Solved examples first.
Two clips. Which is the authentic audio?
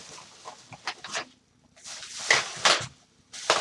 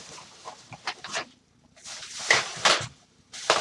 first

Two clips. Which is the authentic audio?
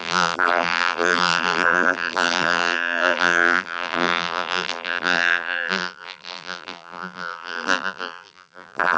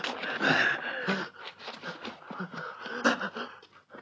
second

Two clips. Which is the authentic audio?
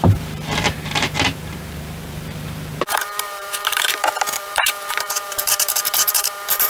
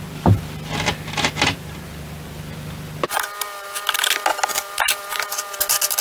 second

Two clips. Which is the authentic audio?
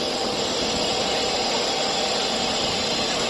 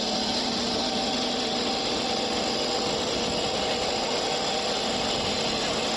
second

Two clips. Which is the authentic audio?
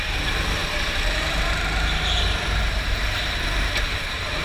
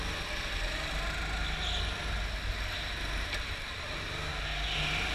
second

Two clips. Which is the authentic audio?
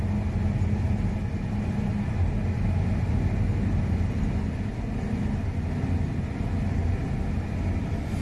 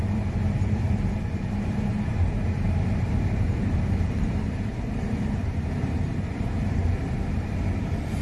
first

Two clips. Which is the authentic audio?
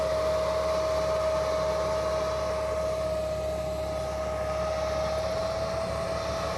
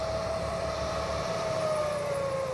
first